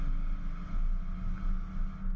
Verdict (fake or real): real